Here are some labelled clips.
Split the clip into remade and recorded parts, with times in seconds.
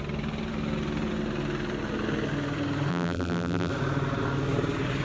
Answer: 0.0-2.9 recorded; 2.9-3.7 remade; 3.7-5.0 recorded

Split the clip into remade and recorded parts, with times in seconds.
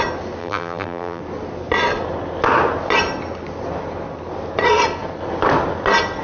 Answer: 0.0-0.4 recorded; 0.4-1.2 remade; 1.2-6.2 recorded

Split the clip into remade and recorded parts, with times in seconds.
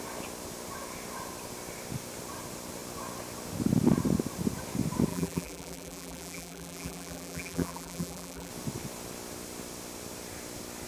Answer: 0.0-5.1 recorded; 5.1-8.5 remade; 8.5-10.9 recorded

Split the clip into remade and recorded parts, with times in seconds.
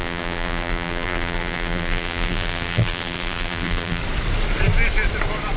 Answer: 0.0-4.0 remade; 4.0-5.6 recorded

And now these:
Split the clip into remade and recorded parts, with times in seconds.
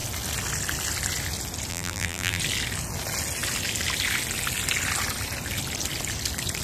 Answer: 0.0-1.7 recorded; 1.7-2.4 remade; 2.4-6.6 recorded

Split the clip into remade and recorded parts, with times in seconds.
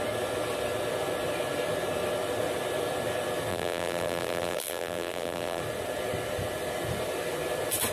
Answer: 0.0-3.5 recorded; 3.5-5.6 remade; 5.6-7.9 recorded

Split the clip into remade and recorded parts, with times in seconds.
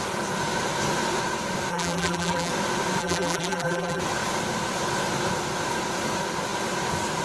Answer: 0.0-1.7 recorded; 1.7-2.5 remade; 2.5-3.0 recorded; 3.0-4.0 remade; 4.0-7.2 recorded